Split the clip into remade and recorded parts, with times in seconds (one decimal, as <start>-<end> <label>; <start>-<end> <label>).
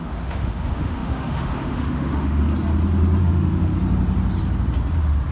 0.0-2.4 remade; 2.4-3.2 recorded; 3.2-3.7 remade; 3.7-5.3 recorded